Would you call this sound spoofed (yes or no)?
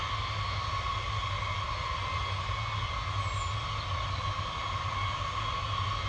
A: no